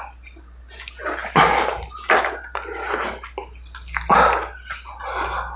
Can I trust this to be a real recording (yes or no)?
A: yes